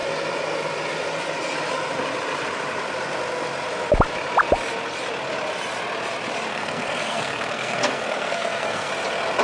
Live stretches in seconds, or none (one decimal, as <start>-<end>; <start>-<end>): 0.0-6.5; 8.9-9.4